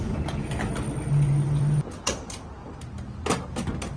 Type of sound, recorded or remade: recorded